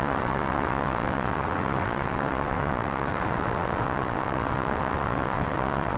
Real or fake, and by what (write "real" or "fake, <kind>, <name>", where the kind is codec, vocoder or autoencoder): fake, vocoder, WaveNeXt